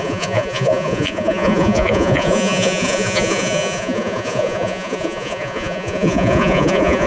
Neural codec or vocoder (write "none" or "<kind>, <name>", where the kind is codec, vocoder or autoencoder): vocoder, Vocos